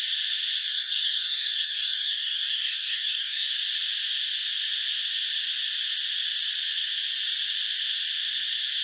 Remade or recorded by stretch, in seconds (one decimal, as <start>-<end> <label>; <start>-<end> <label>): 0.0-0.6 recorded; 0.6-3.5 remade; 3.5-8.8 recorded